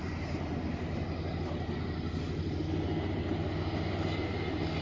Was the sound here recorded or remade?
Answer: recorded